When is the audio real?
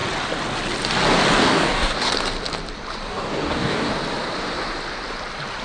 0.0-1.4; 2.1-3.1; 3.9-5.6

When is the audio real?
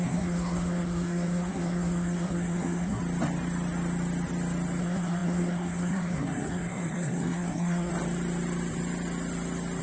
3.0-4.8; 7.9-9.8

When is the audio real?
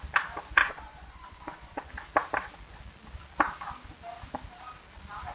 0.0-0.6; 1.9-5.3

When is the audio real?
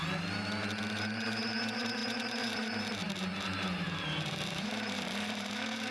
0.0-0.9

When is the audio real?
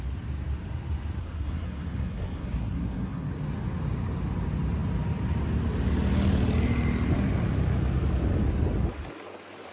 0.0-1.2; 3.3-9.7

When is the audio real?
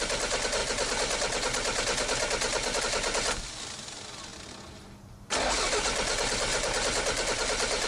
0.0-6.5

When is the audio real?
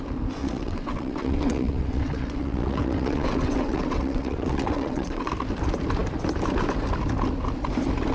0.0-0.4; 5.3-8.1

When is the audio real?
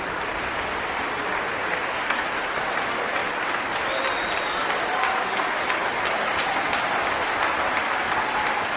0.0-1.9; 2.6-8.8